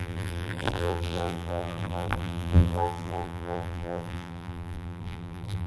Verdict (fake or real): fake